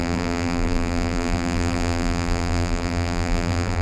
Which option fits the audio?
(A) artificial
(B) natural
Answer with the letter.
A